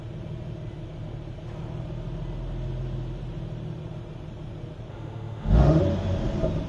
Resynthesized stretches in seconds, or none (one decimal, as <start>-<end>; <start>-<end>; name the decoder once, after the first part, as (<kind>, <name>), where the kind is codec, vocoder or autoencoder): 4.9-5.8 (autoencoder, DAC-VAE)